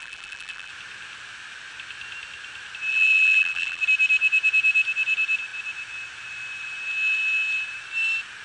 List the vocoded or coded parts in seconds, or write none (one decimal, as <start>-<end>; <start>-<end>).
0.0-0.7; 2.9-3.8

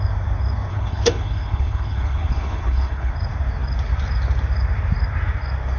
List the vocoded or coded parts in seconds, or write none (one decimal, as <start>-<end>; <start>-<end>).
0.7-3.1

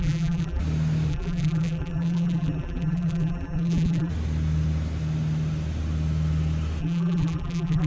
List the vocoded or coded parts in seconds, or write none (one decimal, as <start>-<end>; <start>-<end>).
0.0-0.6; 1.1-4.1; 6.8-7.9

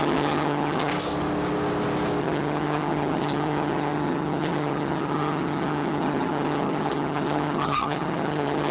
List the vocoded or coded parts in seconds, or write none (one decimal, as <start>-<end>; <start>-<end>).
0.0-0.9; 2.2-8.7

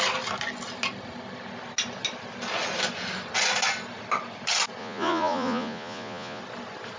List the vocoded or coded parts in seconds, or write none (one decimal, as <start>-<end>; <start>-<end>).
4.8-6.4

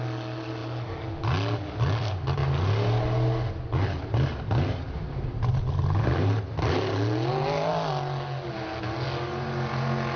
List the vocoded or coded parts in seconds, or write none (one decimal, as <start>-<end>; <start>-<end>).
none

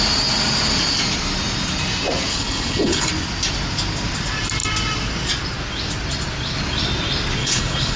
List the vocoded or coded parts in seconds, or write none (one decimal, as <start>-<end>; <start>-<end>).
2.3-3.1; 7.4-8.0

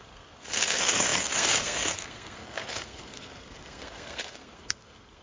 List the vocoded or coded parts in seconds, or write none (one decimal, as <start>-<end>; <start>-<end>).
0.0-5.2